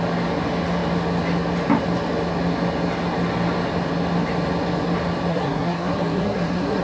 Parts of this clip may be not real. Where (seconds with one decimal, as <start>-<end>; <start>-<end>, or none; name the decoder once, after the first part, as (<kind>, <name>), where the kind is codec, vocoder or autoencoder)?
5.3-6.8 (codec, SNAC)